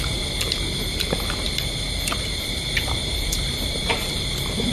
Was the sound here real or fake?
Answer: fake